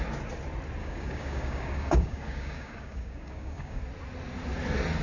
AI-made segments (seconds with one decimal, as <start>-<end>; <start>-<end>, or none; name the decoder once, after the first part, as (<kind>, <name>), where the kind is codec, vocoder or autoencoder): 0.8-3.8 (codec, DAC)